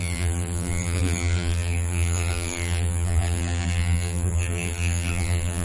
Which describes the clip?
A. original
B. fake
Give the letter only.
B